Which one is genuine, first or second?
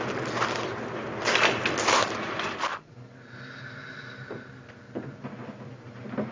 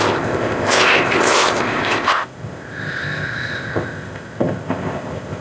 first